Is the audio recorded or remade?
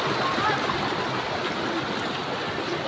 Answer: recorded